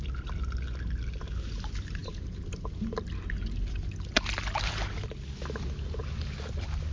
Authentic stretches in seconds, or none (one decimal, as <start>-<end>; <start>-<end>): 0.0-6.9